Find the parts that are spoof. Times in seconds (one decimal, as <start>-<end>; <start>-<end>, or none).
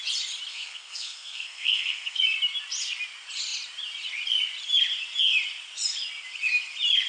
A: 0.5-2.2